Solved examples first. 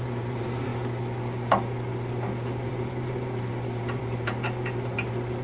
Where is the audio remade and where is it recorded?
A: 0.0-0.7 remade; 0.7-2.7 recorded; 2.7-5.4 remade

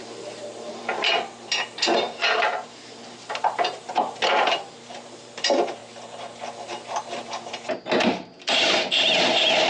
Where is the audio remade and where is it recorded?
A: 0.0-5.8 remade; 5.8-8.0 recorded; 8.0-9.7 remade

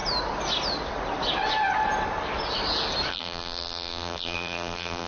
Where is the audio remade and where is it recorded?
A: 0.0-3.1 recorded; 3.1-5.1 remade

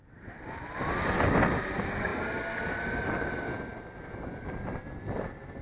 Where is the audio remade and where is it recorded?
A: 0.0-5.6 recorded

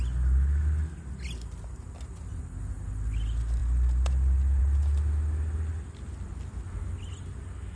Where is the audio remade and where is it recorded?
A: 0.0-7.8 recorded

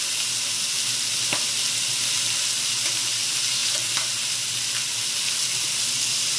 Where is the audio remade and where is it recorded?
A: 0.0-6.4 recorded

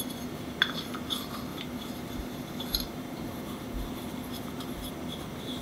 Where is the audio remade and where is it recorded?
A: 0.0-1.5 recorded; 1.5-4.9 remade; 4.9-5.6 recorded

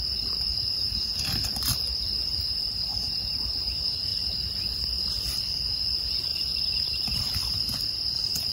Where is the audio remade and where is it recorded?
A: 0.0-4.1 recorded; 4.1-5.2 remade; 5.2-6.3 recorded; 6.3-8.5 remade